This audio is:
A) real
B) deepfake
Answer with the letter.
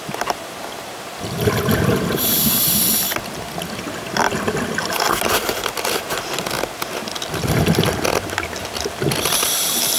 A